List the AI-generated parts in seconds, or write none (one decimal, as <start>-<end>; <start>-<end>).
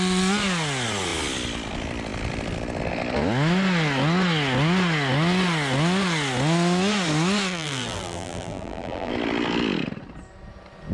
7.5-9.1